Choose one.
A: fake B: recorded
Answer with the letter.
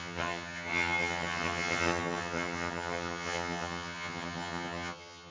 A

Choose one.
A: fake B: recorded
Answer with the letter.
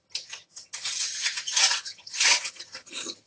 A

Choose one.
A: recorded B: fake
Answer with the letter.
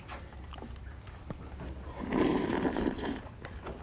A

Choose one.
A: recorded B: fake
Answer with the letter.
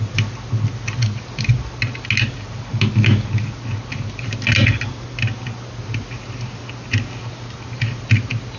A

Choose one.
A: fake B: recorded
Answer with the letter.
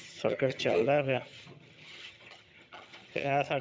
A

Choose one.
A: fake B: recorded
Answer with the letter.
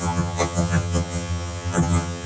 A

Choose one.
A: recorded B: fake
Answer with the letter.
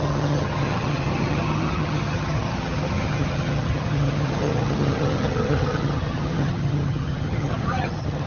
B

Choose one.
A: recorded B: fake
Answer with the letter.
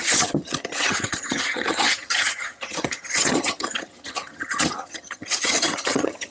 B